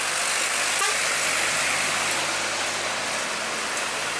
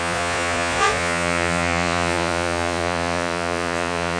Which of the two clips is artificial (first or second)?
second